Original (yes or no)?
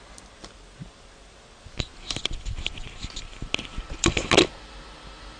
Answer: yes